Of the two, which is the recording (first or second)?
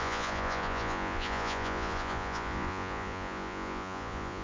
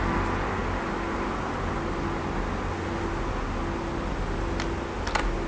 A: second